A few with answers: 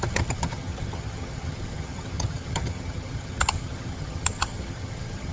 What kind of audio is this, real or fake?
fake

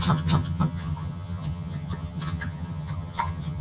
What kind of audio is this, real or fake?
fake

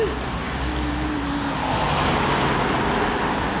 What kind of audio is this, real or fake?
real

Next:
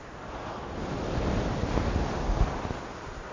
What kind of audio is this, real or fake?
real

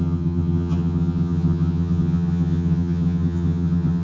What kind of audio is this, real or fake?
fake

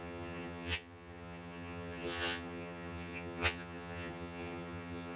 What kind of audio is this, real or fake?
fake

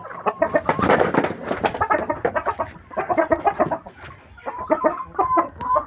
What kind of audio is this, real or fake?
real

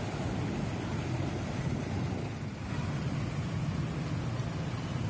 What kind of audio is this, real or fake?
real